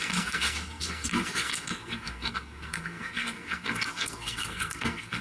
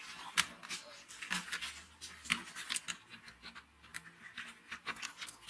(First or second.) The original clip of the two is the second